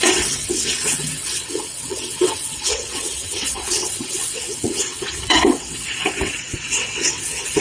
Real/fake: fake